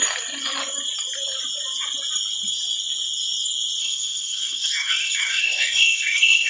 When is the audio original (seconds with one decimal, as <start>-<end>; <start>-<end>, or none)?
0.0-3.8